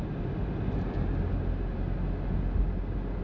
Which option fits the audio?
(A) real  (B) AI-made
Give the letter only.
A